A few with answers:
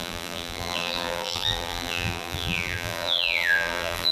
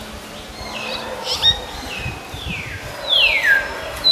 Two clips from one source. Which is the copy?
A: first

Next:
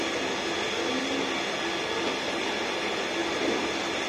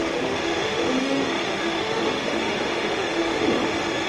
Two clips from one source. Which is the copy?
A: second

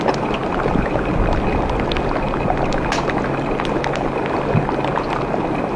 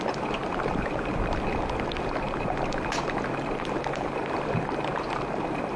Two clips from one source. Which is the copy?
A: second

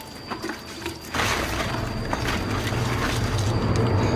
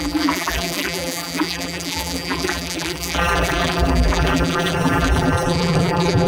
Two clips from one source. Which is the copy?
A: second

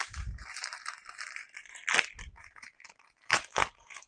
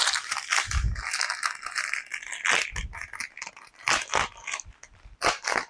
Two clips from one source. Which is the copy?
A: first